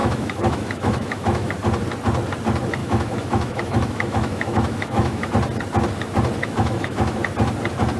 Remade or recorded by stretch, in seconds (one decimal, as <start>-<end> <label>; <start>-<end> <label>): 0.0-1.5 remade; 1.5-2.8 recorded; 2.8-5.3 remade; 5.3-6.4 recorded; 6.4-7.2 remade; 7.2-8.0 recorded